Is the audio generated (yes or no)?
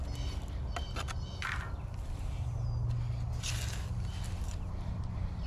no